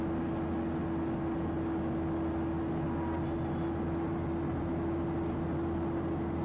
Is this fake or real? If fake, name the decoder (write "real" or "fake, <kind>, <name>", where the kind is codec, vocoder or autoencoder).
real